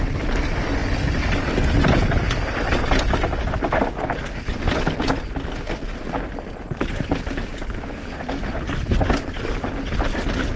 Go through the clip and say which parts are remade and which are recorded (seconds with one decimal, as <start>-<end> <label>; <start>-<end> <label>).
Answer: 0.0-10.6 recorded

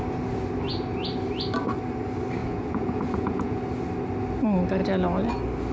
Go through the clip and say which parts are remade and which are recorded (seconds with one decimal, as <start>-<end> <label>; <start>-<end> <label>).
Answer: 0.0-2.4 recorded; 2.4-3.6 remade; 3.6-5.7 recorded

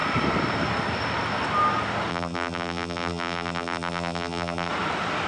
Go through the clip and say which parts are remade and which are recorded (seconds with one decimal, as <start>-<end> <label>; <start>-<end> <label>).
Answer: 0.0-2.1 recorded; 2.1-4.7 remade; 4.7-5.3 recorded

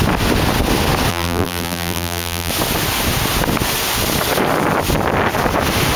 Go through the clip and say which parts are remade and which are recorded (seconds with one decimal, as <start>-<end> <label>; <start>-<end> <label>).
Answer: 0.0-1.1 recorded; 1.1-2.5 remade; 2.5-6.0 recorded

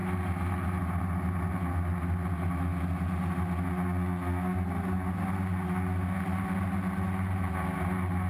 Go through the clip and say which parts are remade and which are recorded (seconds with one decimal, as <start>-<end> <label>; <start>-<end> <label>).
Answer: 0.0-8.3 recorded

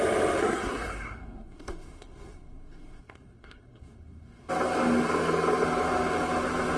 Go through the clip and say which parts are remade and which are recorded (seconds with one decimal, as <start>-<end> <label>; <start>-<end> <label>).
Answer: 0.0-0.4 recorded; 0.4-4.5 remade; 4.5-6.8 recorded

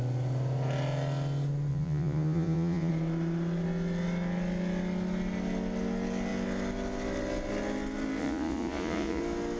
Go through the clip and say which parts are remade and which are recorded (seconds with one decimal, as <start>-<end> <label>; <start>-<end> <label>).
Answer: 0.0-1.7 recorded; 1.7-2.9 remade; 2.9-8.2 recorded; 8.2-9.2 remade; 9.2-9.6 recorded

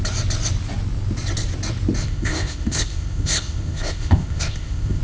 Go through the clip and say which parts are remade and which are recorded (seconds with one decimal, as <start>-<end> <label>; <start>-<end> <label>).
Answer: 0.0-2.0 recorded; 2.0-5.0 remade